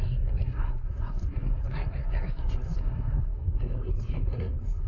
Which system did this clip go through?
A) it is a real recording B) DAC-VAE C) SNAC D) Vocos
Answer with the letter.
C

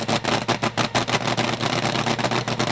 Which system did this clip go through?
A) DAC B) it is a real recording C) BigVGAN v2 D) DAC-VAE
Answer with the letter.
B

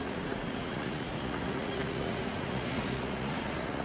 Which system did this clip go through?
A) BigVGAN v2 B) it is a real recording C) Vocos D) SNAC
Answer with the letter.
C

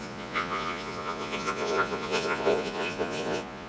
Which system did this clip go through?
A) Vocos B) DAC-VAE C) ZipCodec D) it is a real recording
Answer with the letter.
A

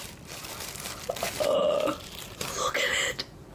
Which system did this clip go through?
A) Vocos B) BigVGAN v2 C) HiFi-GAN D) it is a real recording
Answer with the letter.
B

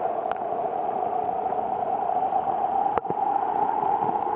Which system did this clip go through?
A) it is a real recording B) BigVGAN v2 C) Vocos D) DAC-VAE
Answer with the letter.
C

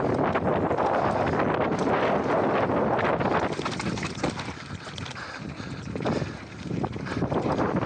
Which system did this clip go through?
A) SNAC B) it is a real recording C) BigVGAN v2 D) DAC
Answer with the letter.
B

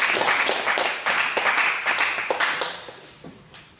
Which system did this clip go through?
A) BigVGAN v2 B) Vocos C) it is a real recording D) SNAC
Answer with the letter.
C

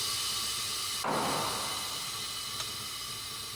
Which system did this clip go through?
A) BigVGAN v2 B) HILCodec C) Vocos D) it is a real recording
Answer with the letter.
D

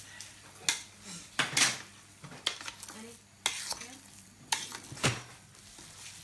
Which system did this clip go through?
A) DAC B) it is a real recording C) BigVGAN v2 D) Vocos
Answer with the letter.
B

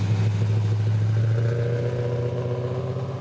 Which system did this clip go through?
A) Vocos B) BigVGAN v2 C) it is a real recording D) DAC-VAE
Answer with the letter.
C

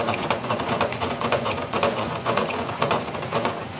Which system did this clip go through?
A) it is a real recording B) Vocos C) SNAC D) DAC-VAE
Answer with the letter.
B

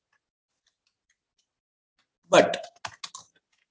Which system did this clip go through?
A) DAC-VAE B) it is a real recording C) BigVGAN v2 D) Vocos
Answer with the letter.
B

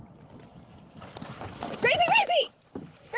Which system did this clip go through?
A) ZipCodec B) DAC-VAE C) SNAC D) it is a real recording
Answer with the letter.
D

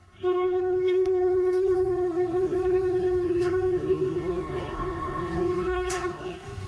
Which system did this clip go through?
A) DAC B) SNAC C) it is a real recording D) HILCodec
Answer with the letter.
B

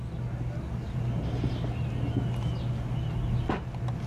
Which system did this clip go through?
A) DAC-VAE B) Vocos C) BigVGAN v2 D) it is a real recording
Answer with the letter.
D